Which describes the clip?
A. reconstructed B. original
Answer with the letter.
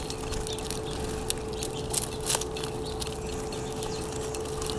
B